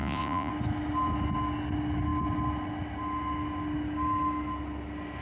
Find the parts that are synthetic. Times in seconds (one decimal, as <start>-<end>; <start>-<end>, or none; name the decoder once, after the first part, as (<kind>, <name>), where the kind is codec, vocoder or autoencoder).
0.0-0.5 (vocoder, Vocos)